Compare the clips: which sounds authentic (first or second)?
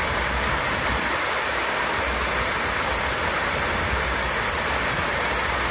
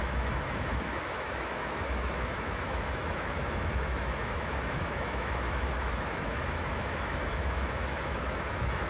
first